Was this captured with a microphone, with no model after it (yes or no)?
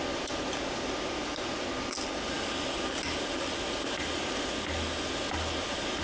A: yes